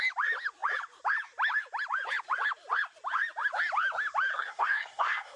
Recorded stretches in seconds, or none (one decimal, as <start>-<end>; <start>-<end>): 0.0-4.3